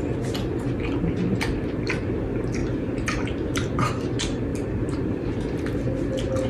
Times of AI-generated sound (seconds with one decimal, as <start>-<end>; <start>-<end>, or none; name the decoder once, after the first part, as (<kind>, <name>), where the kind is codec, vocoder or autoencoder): 2.6-3.9 (vocoder, BigVGAN v2); 4.5-5.6